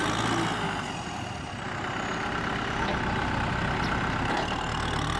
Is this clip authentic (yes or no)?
yes